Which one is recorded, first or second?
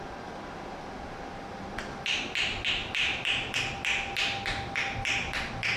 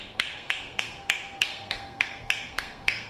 first